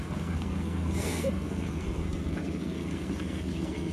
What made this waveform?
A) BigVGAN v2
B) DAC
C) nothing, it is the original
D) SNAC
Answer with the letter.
D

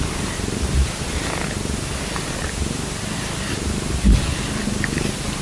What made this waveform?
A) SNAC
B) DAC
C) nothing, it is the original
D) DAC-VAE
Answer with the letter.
C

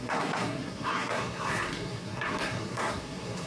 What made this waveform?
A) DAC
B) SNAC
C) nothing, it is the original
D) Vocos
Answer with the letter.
B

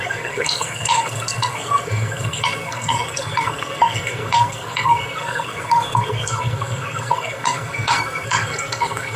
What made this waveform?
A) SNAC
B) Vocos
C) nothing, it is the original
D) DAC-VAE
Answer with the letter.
A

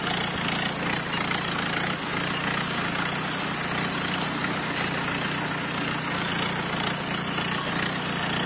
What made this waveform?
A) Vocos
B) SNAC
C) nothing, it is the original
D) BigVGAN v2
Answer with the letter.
C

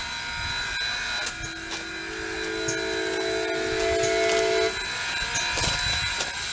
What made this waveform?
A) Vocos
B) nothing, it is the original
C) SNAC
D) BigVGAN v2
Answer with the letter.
B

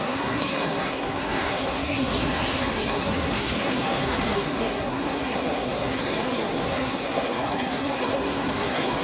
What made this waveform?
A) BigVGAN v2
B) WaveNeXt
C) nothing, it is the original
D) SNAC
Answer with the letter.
D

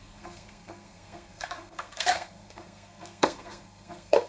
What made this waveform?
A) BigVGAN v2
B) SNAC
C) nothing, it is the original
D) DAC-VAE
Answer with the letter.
B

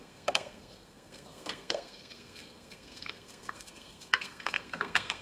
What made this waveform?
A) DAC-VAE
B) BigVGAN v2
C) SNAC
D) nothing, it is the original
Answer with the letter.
C